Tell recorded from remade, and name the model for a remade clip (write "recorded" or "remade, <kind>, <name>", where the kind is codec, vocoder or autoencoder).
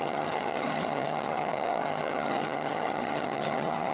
remade, vocoder, HiFi-GAN